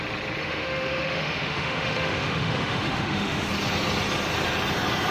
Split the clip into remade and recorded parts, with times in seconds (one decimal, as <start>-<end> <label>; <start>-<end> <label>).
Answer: 0.0-0.4 recorded; 0.4-3.5 remade; 3.5-5.1 recorded